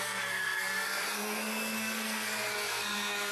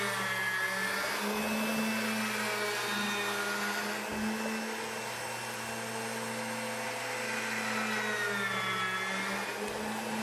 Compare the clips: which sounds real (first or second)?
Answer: second